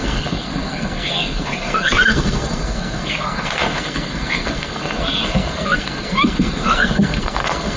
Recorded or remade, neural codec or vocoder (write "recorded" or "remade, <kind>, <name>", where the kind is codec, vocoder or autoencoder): remade, codec, SNAC